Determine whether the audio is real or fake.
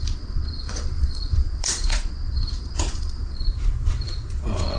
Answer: fake